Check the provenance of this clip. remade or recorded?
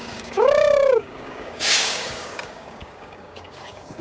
remade